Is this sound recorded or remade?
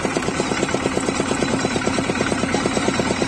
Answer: remade